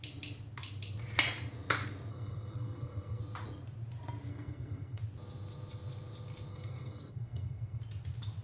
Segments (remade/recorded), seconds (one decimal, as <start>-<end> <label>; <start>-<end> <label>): 0.0-2.1 recorded; 2.1-3.2 remade; 3.2-4.3 recorded; 4.3-5.0 remade; 5.0-6.5 recorded; 6.5-7.8 remade; 7.8-8.4 recorded